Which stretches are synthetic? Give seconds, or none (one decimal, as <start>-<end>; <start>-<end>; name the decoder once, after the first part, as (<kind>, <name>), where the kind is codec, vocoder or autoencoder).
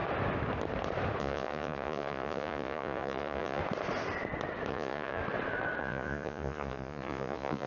1.2-3.6 (vocoder, Vocos); 4.7-5.2; 5.8-7.7